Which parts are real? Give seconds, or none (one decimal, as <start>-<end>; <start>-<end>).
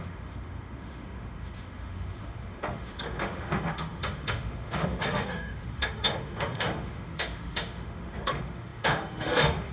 none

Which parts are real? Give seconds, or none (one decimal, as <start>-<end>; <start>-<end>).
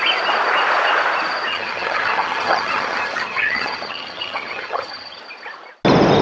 0.0-1.5; 5.2-6.2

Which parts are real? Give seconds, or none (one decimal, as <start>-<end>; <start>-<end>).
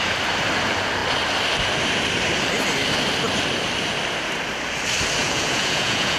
0.0-5.2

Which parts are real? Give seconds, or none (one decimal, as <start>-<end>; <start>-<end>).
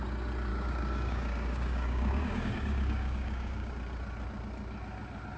0.0-0.5; 3.7-5.4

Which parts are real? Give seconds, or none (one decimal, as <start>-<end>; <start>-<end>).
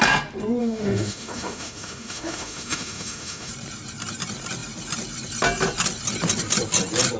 0.0-0.6; 3.5-7.2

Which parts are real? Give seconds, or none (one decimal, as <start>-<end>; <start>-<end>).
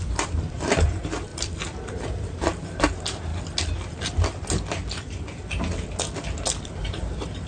1.3-1.9; 3.3-6.6